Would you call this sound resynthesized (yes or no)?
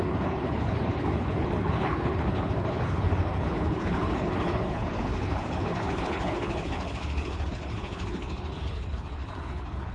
yes